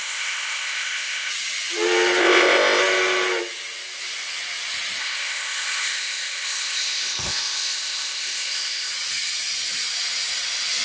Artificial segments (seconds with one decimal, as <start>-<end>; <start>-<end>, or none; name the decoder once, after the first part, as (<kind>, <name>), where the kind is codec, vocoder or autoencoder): 0.0-1.3 (codec, ZipCodec); 2.2-2.8; 5.0-8.9